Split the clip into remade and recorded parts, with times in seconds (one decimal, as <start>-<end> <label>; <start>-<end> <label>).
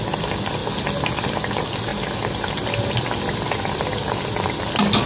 0.0-0.6 remade; 0.6-1.3 recorded; 1.3-1.9 remade; 1.9-4.1 recorded; 4.1-5.1 remade